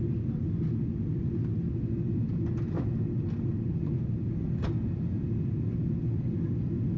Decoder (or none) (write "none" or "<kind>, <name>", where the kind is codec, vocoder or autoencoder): none